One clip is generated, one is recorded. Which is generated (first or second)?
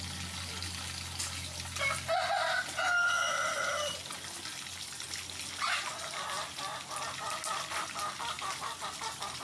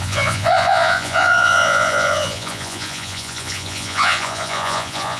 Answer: second